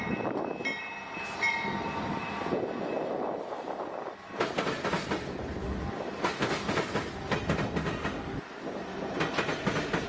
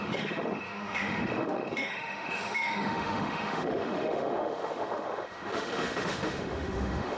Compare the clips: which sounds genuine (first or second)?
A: first